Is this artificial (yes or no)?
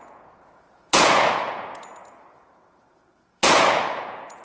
yes